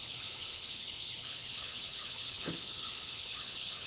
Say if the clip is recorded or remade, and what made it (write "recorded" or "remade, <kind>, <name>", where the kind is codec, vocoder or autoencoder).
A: remade, codec, HILCodec